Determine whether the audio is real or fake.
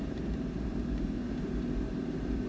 fake